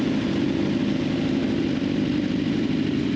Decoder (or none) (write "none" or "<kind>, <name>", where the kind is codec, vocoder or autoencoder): none